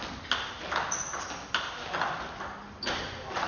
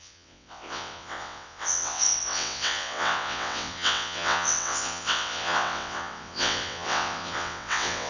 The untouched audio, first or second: first